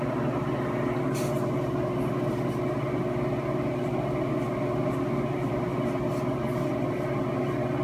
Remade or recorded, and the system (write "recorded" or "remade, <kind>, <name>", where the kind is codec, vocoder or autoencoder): recorded